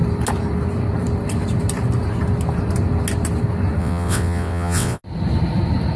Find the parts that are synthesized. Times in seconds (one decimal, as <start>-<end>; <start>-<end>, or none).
3.8-5.0